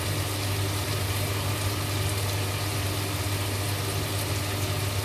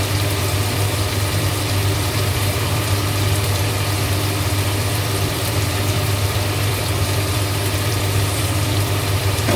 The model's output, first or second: second